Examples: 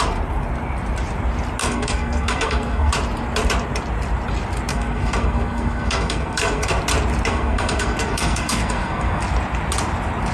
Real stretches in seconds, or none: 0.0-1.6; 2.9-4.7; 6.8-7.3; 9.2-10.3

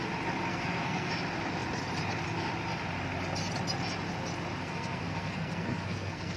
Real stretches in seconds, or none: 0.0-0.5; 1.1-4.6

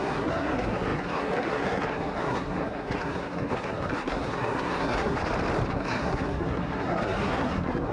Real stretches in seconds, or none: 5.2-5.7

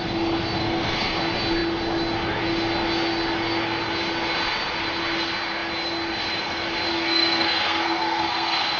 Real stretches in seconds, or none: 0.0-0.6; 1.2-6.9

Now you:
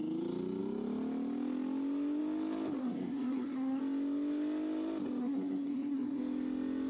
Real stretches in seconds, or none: 0.0-2.8; 3.8-5.2; 6.2-6.9

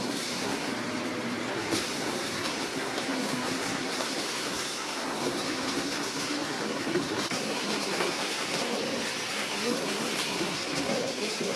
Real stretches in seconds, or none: 0.7-1.5; 8.8-9.3

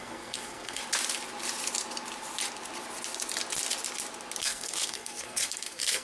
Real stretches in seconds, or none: 0.8-4.4

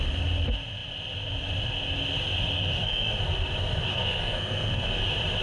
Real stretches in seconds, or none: 0.0-2.7; 3.2-3.9; 5.0-5.4